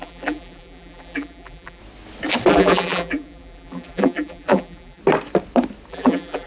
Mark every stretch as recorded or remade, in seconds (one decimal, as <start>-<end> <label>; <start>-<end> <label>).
0.0-1.8 remade; 1.8-2.5 recorded; 2.5-5.0 remade; 5.0-5.9 recorded; 5.9-6.5 remade